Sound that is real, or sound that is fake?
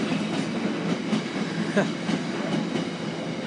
real